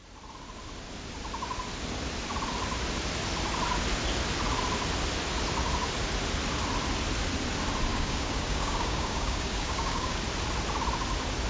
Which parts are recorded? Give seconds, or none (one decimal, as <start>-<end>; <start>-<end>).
0.0-7.9; 10.2-11.5